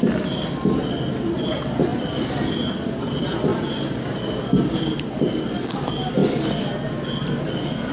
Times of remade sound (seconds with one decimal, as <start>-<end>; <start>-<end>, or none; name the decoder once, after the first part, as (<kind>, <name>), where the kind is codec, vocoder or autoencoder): 1.9-3.0 (vocoder, BigVGAN v2)